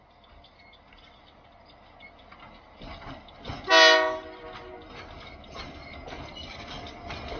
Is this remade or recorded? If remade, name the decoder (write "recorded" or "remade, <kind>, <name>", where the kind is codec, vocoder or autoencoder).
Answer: recorded